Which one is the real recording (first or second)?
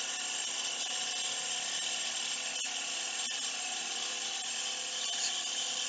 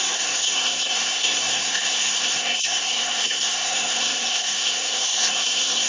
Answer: first